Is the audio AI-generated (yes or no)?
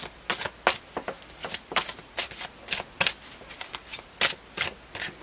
no